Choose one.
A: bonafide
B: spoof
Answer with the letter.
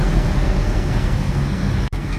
B